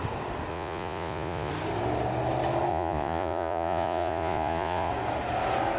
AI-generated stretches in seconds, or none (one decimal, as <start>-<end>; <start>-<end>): 0.5-1.5; 2.7-4.9